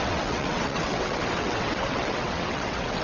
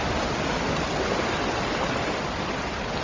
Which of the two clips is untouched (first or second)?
second